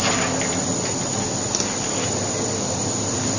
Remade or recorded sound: recorded